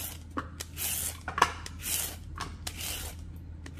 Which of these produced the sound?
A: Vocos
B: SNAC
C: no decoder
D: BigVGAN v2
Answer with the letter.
C